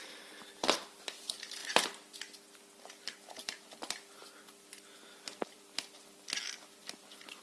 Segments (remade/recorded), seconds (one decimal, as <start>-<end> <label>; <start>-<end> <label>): 0.0-7.4 recorded